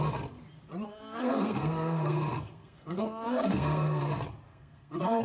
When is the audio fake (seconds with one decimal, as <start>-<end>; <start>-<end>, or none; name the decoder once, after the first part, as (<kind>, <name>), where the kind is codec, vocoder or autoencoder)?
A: 0.9-4.0 (codec, SNAC); 4.5-5.2

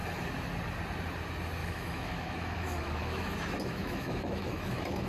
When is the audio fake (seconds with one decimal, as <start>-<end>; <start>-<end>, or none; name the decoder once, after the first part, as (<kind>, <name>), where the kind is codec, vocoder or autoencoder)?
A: 1.6-5.1 (autoencoder, DAC-VAE)